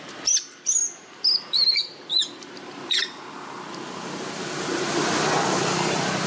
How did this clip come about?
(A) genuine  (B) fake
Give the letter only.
A